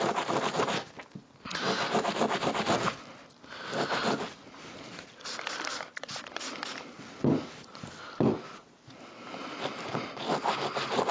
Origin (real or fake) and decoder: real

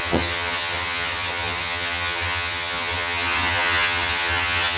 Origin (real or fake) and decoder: fake, vocoder, HiFi-GAN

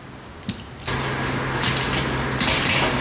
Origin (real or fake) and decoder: real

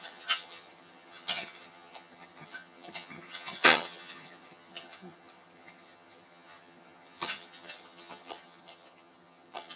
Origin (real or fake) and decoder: fake, vocoder, HiFi-GAN